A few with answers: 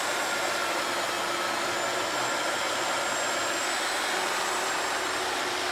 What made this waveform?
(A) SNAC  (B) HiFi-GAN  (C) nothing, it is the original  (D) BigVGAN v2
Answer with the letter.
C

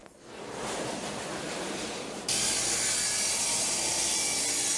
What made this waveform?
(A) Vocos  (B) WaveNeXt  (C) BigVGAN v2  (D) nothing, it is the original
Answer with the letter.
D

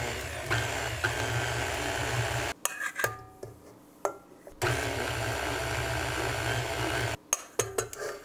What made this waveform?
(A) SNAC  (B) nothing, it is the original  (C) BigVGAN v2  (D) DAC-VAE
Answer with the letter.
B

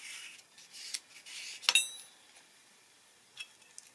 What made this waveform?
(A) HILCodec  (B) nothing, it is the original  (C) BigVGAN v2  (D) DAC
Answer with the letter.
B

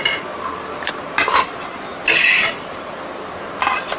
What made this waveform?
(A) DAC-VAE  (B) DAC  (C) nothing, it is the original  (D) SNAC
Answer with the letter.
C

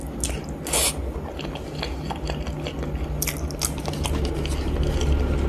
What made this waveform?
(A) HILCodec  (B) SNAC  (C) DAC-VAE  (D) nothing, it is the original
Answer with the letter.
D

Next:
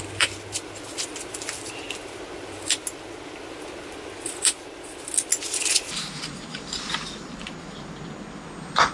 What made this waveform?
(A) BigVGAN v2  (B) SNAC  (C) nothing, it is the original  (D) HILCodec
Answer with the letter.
C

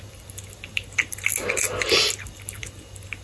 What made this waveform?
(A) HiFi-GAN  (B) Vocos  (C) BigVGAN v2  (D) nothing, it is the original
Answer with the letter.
D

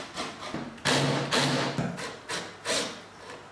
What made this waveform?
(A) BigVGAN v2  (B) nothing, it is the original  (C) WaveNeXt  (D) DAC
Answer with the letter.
B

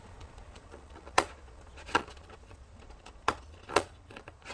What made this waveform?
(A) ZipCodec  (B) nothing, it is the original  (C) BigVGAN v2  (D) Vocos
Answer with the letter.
D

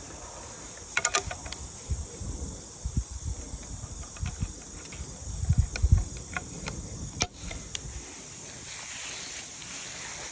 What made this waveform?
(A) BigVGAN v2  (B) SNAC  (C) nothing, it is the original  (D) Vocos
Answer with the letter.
C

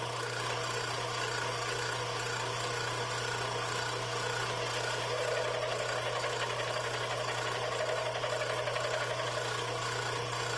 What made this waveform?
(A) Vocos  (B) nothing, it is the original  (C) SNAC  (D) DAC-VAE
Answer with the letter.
B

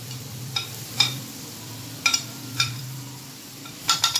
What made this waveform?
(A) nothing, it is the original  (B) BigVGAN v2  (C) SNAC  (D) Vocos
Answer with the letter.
B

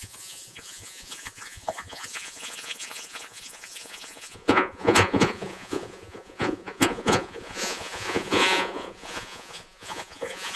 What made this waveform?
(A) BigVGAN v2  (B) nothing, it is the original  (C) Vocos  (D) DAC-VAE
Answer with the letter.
C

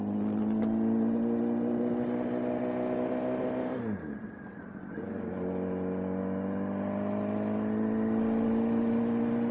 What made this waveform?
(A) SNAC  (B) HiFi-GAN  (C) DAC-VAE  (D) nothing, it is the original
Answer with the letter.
D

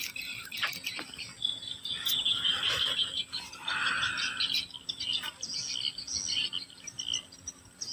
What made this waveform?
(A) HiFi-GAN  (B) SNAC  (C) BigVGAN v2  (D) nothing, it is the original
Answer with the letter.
D